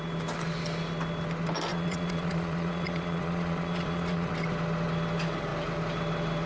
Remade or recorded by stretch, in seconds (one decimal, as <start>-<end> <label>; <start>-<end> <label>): 0.0-1.7 recorded; 1.7-4.3 remade; 4.3-6.5 recorded